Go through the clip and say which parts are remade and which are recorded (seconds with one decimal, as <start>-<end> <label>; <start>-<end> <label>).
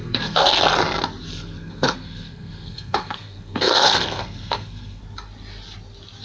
0.0-0.6 remade; 0.6-1.3 recorded; 1.3-5.0 remade; 5.0-6.2 recorded